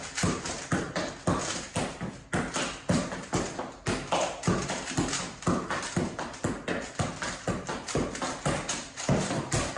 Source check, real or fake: real